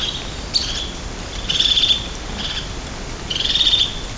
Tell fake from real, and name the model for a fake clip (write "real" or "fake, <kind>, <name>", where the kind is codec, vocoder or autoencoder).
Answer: real